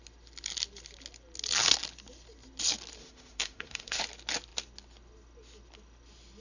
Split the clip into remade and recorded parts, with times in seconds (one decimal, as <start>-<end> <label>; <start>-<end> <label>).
0.0-3.0 recorded; 3.0-4.0 remade; 4.0-6.4 recorded